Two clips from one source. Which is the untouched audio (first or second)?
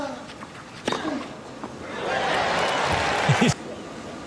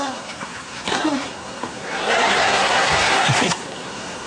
first